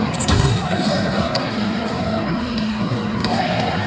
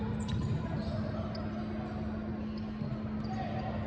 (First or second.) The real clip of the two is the second